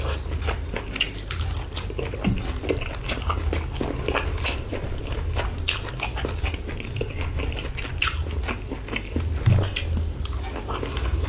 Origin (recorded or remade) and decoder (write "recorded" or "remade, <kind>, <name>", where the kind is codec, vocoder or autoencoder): recorded